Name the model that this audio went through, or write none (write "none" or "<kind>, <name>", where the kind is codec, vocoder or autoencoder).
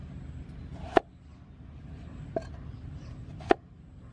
none